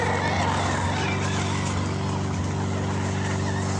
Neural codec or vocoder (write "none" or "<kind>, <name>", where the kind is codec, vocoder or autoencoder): none